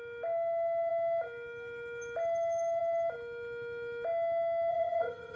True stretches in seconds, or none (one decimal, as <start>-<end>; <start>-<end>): 0.0-4.7